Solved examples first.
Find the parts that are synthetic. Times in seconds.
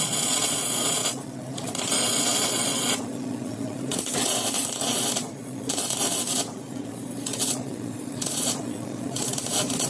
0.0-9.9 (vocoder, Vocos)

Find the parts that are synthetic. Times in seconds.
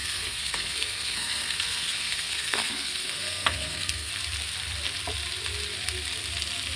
0.0-4.1 (codec, SNAC)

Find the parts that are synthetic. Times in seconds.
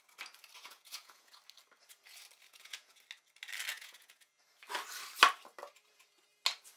0.6-1.4 (vocoder, Vocos); 2.5-3.0; 3.7-4.3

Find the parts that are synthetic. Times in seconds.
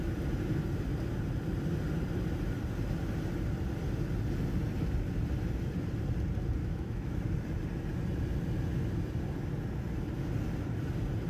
6.6-7.2 (autoencoder, DAC-VAE)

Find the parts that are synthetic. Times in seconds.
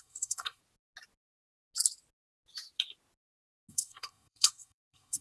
0.0-0.6 (codec, SNAC); 3.7-5.2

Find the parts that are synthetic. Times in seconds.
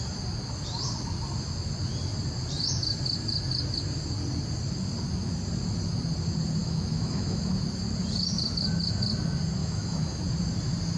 6.6-7.5 (autoencoder, DAC-VAE); 9.6-10.2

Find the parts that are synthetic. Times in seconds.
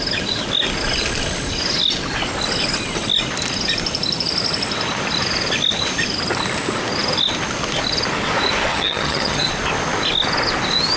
8.7-9.5 (vocoder, HiFi-GAN)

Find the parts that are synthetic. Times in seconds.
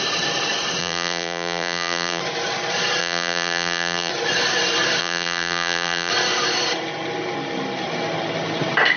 0.8-2.2 (vocoder, BigVGAN v2); 3.0-4.1; 5.0-6.1